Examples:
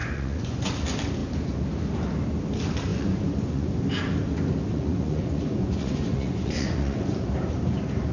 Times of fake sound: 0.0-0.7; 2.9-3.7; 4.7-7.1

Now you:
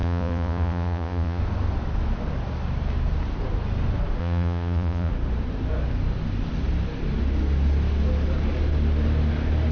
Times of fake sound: 0.0-1.4; 4.2-5.1

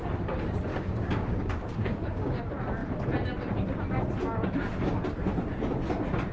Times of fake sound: 0.7-2.4

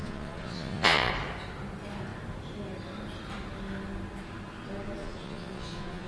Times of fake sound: 0.0-1.1; 5.0-6.1

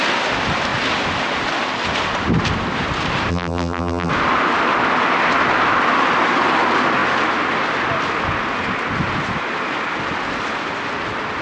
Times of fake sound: 3.3-4.1